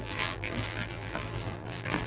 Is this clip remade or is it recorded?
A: remade